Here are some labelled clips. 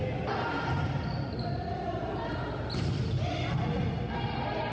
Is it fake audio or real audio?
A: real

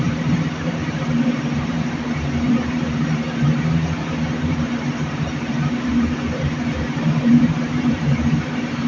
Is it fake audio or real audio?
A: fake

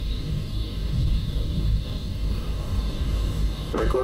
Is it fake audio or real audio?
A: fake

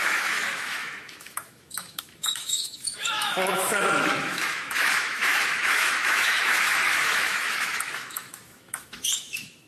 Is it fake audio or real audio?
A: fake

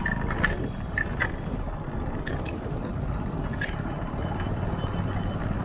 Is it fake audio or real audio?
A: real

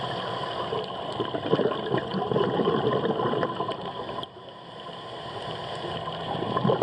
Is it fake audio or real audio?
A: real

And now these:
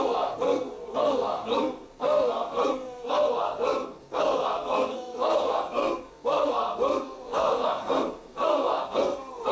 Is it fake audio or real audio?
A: fake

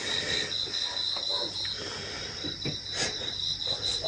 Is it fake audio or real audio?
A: real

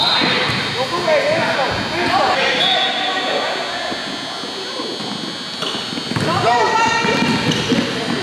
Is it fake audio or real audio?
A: real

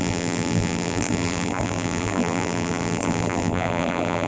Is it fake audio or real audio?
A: fake